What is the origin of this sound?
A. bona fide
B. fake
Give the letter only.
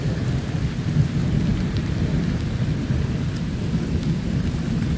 A